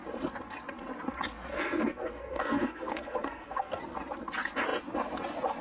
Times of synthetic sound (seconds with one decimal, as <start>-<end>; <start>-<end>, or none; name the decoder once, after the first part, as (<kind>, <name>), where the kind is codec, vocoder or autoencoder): 1.5-3.8 (codec, SNAC)